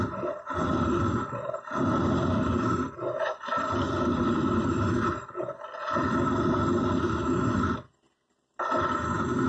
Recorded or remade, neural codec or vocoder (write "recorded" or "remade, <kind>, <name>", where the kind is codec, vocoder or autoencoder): recorded